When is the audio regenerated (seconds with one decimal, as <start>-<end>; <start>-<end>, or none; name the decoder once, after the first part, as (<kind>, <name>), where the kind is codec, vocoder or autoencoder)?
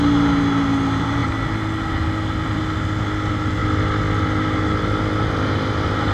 none